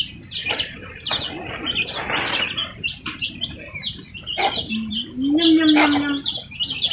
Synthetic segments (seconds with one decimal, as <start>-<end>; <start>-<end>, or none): 2.6-3.3; 3.8-4.9